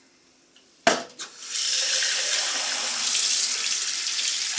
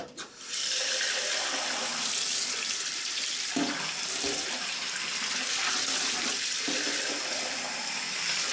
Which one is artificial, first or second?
second